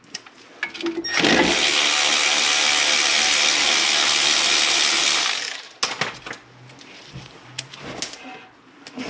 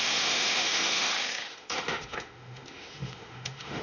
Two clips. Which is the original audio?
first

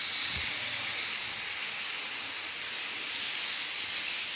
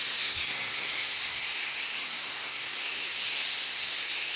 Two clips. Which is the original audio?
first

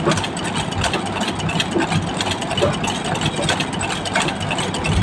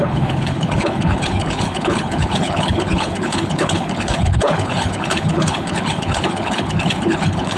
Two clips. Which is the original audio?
first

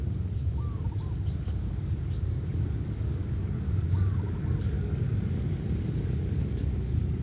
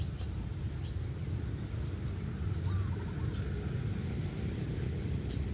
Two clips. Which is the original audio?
second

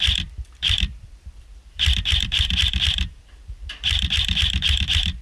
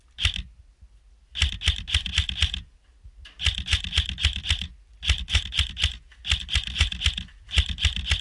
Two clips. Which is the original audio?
second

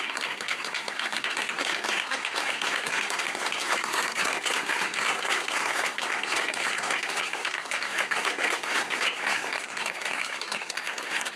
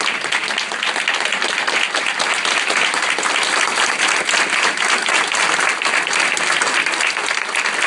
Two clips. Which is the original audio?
second